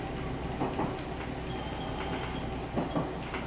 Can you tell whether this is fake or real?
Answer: real